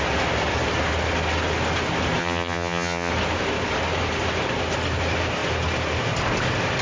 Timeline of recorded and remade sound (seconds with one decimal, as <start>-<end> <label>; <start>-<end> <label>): 0.0-2.2 recorded; 2.2-3.1 remade; 3.1-6.8 recorded